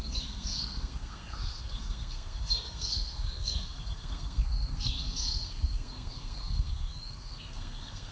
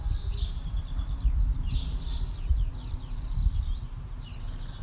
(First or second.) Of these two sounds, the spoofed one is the first